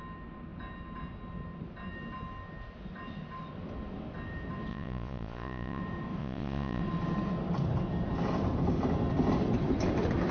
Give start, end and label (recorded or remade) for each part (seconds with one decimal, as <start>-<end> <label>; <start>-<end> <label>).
0.0-4.7 recorded; 4.7-5.8 remade; 5.8-6.2 recorded; 6.2-6.8 remade; 6.8-10.3 recorded